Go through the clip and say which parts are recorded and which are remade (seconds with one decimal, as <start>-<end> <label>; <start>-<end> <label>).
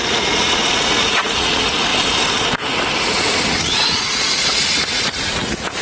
0.0-1.9 remade; 1.9-3.0 recorded; 3.0-5.8 remade